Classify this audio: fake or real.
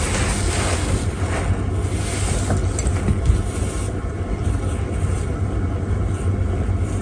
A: real